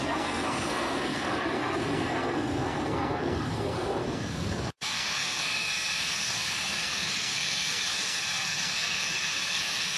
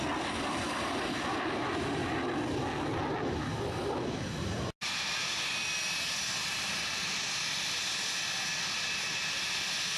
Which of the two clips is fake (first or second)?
first